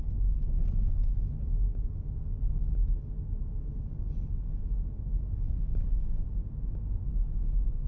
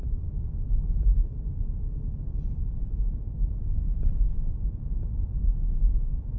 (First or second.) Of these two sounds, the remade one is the second